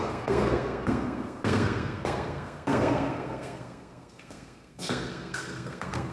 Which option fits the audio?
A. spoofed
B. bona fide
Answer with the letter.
A